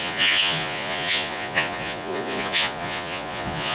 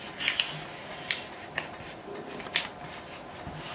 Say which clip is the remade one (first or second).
first